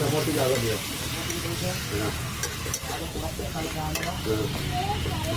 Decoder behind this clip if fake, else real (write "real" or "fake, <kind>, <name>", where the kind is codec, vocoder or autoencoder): real